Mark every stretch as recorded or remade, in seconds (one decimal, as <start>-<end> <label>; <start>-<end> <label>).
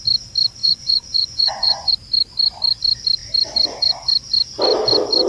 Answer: 0.0-0.6 recorded; 0.6-1.9 remade; 1.9-5.3 recorded